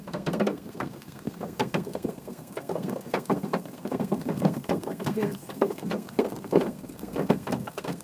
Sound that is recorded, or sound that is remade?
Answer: remade